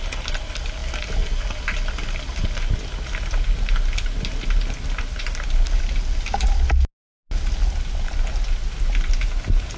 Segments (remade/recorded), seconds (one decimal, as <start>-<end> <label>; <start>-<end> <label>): 0.0-9.8 recorded